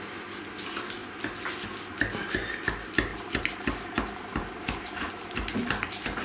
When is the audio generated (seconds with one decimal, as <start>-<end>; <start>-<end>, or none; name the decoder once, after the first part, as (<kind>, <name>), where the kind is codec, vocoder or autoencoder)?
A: 3.1-5.1 (vocoder, BigVGAN v2)